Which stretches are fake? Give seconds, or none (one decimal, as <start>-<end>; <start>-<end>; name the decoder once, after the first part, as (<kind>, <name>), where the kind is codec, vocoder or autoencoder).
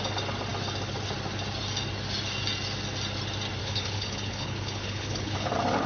3.6-5.5 (codec, HILCodec)